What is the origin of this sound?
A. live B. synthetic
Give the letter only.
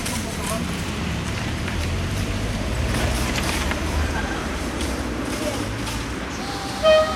B